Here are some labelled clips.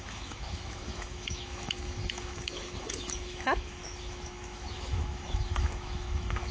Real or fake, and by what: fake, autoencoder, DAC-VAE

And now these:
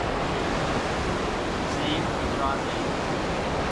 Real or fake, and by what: real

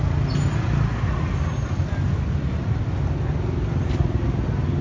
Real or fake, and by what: real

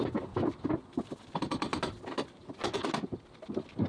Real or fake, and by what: real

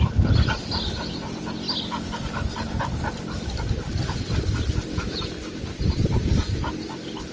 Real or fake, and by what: real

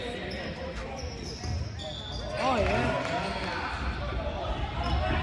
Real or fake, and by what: real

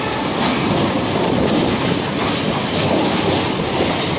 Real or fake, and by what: real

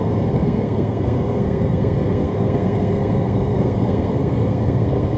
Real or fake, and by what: fake, codec, SNAC